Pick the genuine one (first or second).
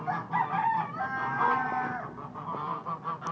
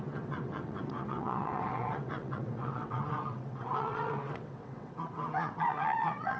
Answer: first